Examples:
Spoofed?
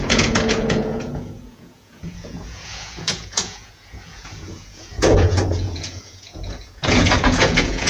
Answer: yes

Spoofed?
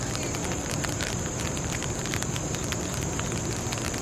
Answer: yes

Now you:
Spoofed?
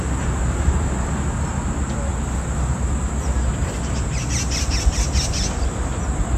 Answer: no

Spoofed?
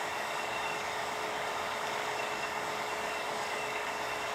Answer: yes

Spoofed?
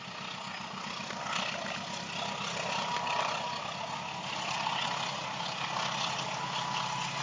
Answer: no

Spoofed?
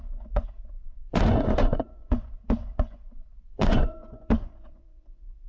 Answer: yes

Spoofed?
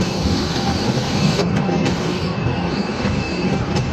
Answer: yes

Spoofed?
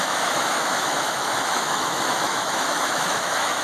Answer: yes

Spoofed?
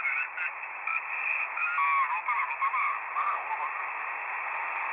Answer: no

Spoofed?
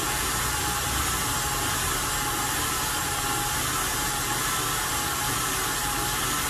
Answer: no